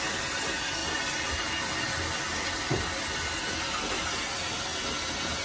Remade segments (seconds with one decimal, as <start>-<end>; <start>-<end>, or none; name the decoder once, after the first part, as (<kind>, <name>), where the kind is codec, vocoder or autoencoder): none